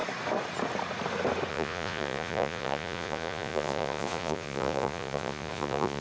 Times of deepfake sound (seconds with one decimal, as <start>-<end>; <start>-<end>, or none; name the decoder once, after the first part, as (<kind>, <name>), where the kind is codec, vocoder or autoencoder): 1.5-6.0 (vocoder, Vocos)